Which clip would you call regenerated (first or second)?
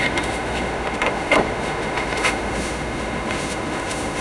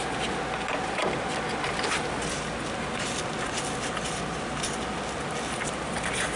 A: first